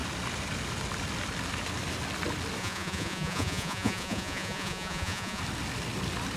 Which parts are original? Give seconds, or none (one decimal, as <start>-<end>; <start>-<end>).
0.0-2.6; 5.4-6.4